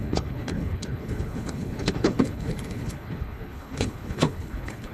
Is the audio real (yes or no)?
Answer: no